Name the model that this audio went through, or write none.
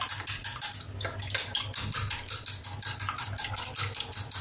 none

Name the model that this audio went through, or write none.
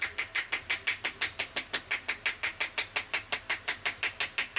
none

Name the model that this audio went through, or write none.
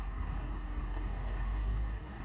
codec, DAC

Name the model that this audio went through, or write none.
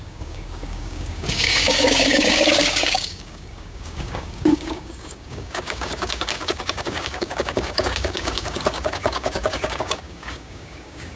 codec, DAC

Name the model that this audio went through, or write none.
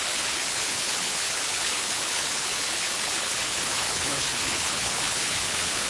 codec, HILCodec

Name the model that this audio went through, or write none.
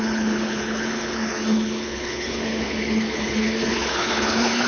codec, HILCodec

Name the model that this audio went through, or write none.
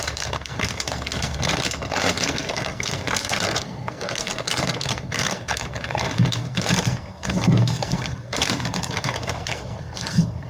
codec, SNAC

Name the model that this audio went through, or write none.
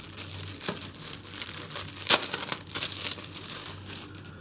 none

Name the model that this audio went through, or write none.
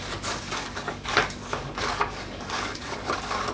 codec, DAC